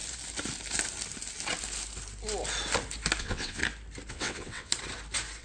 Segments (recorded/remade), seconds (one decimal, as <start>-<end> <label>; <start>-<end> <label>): 0.0-3.2 recorded; 3.2-3.6 remade; 3.6-4.1 recorded; 4.1-4.7 remade; 4.7-5.4 recorded